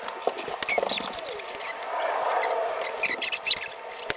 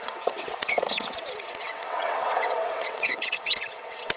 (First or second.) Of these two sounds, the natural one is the first